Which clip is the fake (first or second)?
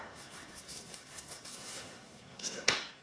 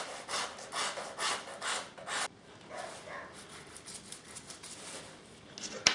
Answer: first